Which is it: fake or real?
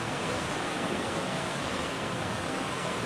fake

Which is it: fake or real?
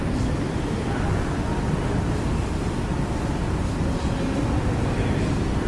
real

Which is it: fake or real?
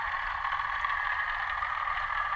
real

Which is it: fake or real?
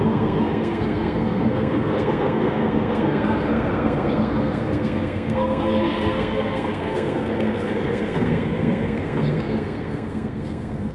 fake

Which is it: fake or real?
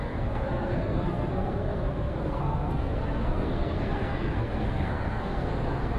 fake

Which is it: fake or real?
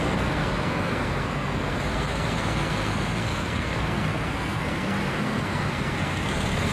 fake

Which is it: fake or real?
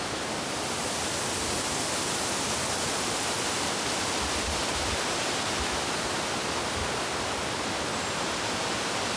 real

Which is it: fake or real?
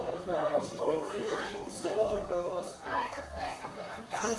fake